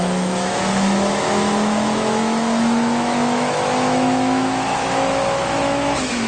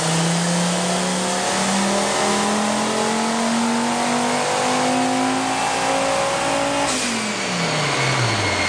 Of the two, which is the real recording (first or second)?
second